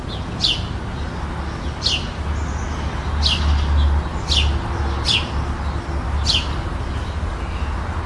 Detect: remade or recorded recorded